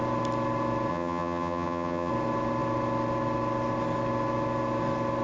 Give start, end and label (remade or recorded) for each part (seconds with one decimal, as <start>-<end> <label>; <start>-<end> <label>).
0.0-0.9 recorded; 0.9-2.1 remade; 2.1-5.2 recorded